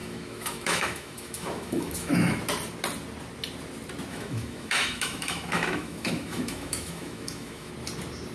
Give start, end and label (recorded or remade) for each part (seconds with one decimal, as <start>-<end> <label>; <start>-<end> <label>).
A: 0.0-2.4 remade; 2.4-4.1 recorded; 4.1-7.7 remade; 7.7-8.3 recorded